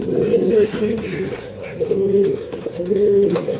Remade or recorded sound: remade